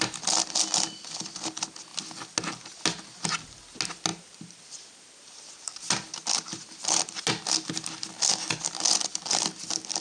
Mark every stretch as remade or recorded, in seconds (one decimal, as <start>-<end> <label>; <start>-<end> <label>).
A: 0.0-4.1 recorded; 4.1-7.2 remade; 7.2-10.0 recorded